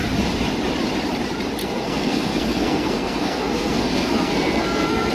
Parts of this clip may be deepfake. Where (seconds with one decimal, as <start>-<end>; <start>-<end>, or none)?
1.6-5.1